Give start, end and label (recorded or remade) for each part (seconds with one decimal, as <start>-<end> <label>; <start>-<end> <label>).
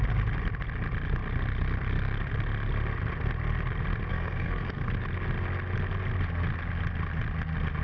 0.0-4.1 recorded; 4.1-4.9 remade; 4.9-7.8 recorded